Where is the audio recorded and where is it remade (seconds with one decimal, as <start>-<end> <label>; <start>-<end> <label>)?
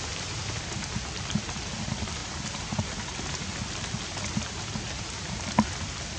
0.0-6.2 recorded